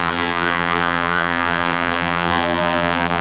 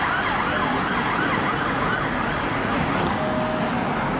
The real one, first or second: second